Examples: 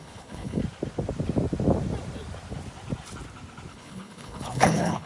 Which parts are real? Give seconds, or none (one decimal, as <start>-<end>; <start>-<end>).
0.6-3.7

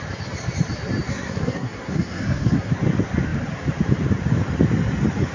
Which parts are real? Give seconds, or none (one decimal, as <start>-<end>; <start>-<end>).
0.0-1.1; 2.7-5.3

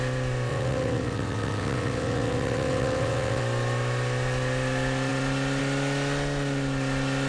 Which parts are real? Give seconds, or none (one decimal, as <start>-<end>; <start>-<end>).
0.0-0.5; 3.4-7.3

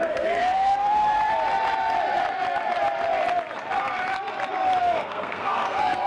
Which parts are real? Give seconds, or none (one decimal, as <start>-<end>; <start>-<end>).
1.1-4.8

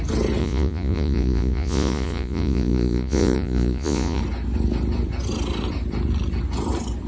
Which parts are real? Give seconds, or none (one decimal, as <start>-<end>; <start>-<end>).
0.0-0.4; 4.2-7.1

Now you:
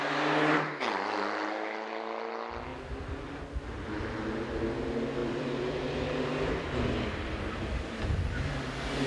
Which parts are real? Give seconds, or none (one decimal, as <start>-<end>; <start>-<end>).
0.0-5.2; 6.3-9.1

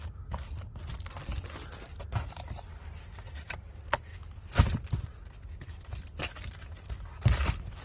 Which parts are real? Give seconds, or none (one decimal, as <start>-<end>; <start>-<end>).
0.0-1.9; 3.6-7.8